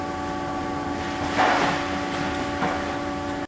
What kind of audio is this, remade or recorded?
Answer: recorded